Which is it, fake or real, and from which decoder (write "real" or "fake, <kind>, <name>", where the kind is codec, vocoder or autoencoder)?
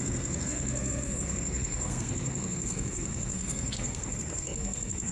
fake, codec, SNAC